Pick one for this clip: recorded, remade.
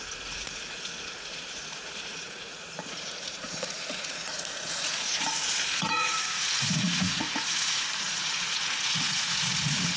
remade